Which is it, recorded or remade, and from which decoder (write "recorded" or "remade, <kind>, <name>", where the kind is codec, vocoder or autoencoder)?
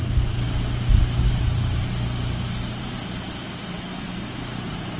recorded